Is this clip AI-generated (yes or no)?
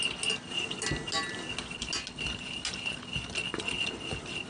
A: no